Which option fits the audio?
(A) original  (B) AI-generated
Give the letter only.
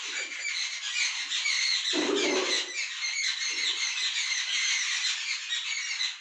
A